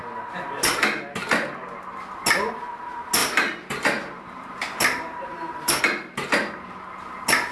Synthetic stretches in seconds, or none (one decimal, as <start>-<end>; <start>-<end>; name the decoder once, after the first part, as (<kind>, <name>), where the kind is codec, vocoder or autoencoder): 3.2-5.8 (vocoder, BigVGAN v2)